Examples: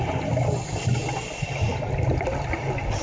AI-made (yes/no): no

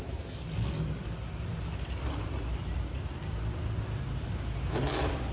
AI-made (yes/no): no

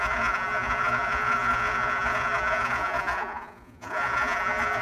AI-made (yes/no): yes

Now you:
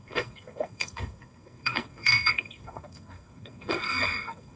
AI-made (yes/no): yes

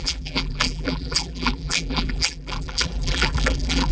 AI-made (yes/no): yes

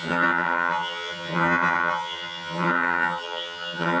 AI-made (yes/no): yes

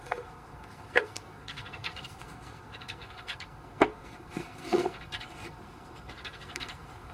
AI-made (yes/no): yes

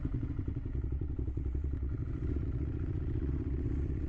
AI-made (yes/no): yes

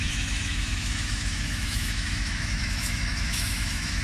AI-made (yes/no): yes